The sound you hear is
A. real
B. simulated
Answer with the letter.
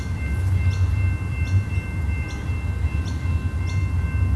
A